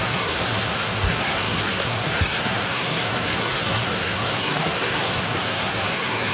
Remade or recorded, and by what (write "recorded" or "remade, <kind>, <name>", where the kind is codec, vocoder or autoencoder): remade, codec, SNAC